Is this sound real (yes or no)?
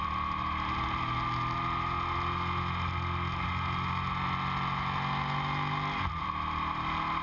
yes